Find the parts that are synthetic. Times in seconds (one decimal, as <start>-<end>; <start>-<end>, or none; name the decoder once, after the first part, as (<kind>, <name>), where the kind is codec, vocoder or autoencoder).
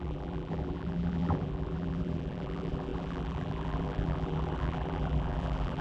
0.0-5.8 (vocoder, BigVGAN v2)